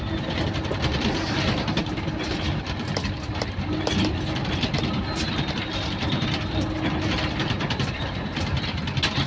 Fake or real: fake